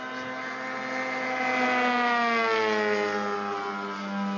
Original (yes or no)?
yes